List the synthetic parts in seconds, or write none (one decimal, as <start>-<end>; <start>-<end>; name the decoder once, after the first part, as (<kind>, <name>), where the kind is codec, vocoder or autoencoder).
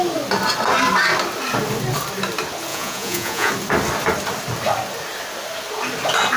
2.7-3.5 (vocoder, Vocos)